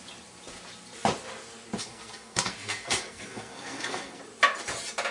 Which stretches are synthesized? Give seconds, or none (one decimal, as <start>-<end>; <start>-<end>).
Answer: 1.8-4.2